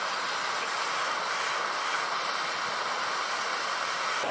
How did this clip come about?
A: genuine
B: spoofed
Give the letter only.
A